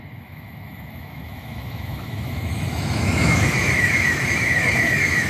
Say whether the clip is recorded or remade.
remade